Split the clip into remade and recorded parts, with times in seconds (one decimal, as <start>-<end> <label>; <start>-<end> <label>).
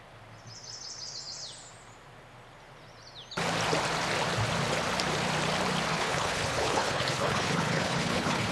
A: 0.0-5.9 recorded; 5.9-8.5 remade